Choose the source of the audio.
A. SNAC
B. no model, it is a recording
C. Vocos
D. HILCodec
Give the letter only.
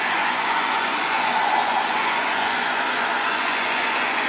C